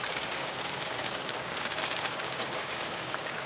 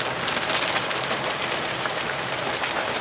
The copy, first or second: first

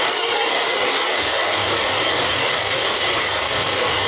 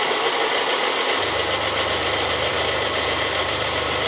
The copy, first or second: first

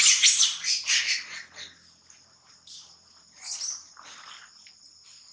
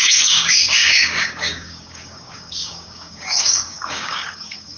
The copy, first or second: second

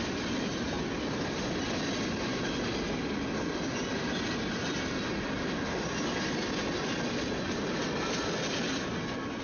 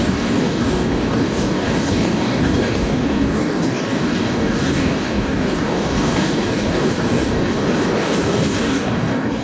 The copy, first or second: second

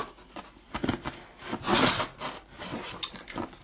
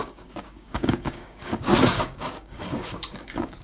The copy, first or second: second